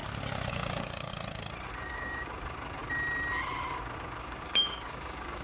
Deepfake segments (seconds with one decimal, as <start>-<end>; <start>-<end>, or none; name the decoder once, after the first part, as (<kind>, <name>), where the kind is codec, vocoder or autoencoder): 0.5-1.1 (codec, DAC); 1.7-2.8; 3.7-5.4